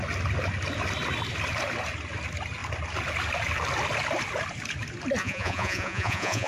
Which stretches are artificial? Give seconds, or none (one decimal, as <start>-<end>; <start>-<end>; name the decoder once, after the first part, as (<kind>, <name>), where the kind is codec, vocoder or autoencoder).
5.2-6.5 (vocoder, Vocos)